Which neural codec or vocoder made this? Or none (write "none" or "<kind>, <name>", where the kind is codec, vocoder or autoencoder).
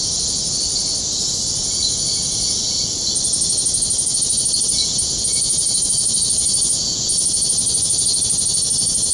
none